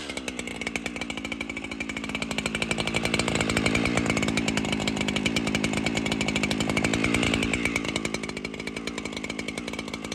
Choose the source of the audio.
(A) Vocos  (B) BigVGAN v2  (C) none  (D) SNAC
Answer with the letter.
C